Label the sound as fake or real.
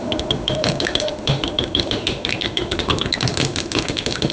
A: fake